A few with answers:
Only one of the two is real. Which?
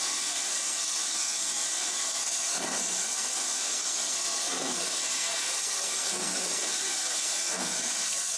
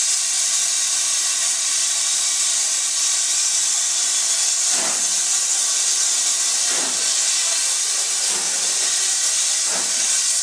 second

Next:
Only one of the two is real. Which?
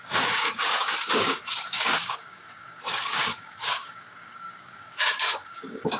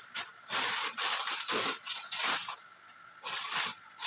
second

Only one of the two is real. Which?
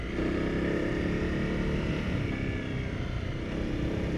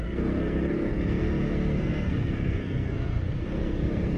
first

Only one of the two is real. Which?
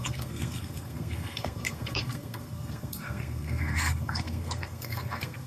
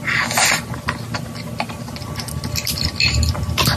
second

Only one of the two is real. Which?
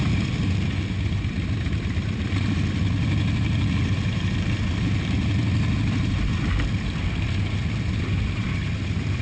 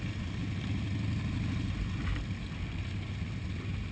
second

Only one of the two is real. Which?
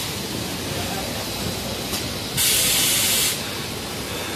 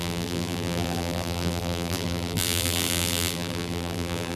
first